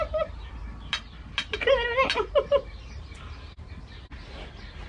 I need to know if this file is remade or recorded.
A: recorded